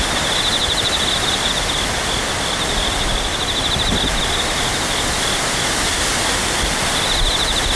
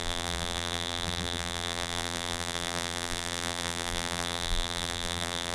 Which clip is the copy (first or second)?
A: second